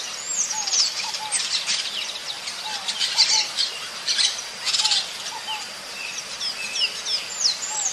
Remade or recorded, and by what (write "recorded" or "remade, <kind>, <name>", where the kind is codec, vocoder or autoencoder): recorded